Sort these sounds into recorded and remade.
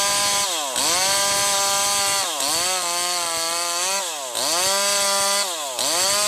recorded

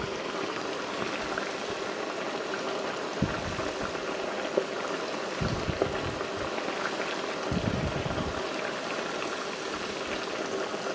recorded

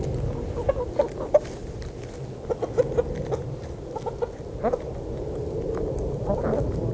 recorded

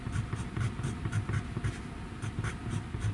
recorded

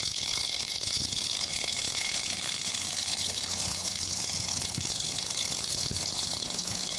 remade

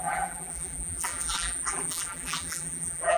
remade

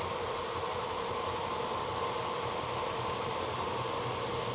recorded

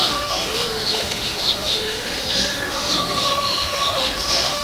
remade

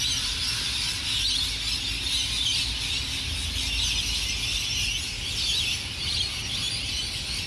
recorded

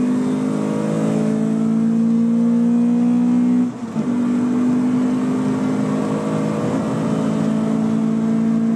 recorded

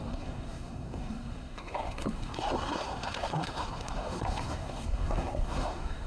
remade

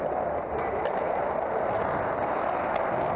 recorded